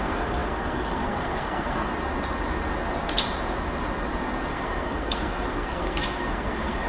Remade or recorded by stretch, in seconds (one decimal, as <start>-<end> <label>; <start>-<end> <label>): 0.0-1.9 remade; 1.9-4.5 recorded; 4.5-6.9 remade